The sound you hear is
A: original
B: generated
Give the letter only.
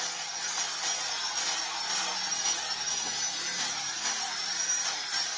A